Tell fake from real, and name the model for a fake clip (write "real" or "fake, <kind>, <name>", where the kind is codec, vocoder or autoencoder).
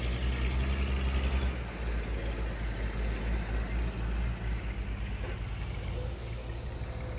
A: real